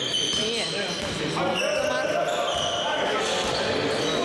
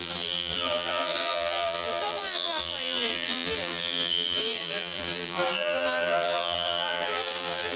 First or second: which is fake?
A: second